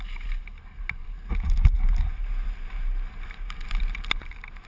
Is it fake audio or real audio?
real